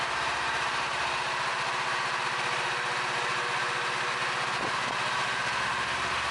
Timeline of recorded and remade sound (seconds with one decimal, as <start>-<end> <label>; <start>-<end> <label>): 0.0-6.3 recorded